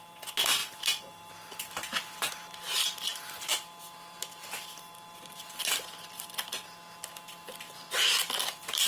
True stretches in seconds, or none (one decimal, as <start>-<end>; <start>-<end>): 0.0-0.6; 2.3-8.9